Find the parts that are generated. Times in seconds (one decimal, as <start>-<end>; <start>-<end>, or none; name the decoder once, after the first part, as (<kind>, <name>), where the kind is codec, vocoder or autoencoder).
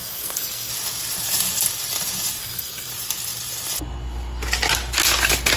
0.0-0.7 (codec, SNAC); 2.4-2.9